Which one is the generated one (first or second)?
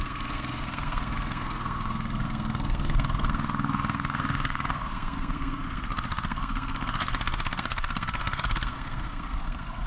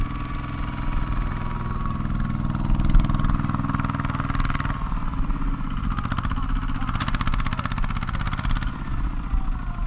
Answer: first